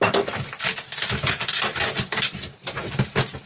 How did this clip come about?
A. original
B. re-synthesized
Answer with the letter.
A